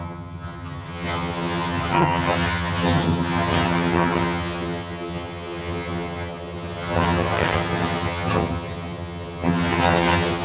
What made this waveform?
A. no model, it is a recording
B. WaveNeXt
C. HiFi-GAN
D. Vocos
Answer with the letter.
C